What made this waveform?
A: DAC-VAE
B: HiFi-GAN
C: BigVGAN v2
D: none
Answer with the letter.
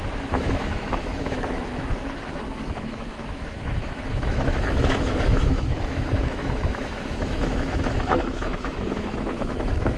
A